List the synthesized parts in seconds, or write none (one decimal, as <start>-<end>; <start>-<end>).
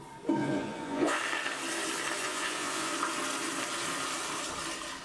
0.4-1.2; 2.2-2.9